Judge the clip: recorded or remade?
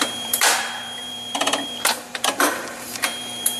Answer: remade